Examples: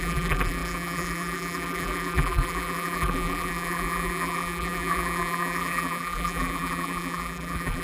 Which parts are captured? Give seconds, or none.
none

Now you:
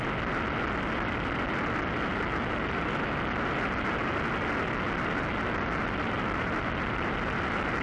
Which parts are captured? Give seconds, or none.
0.0-7.8

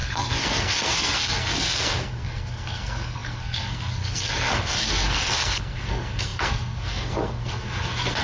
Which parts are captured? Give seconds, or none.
none

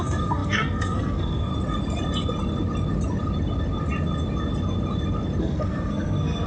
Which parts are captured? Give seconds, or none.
1.5-5.4

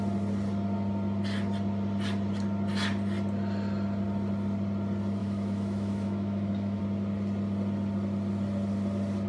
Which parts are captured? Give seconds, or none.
0.0-5.2; 6.8-9.3

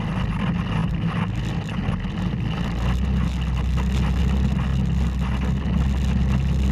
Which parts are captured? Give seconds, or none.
0.0-6.7